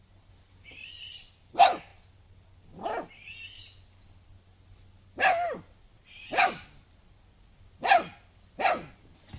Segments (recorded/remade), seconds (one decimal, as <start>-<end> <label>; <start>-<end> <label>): 0.0-9.4 recorded